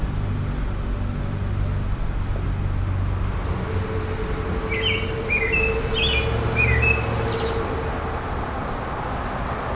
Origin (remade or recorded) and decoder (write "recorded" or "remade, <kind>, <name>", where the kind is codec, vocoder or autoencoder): recorded